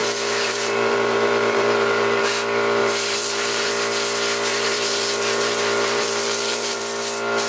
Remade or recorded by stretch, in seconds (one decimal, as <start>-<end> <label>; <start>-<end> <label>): 0.0-2.3 remade; 2.3-2.8 recorded; 2.8-3.7 remade; 3.7-4.5 recorded; 4.5-6.8 remade; 6.8-7.5 recorded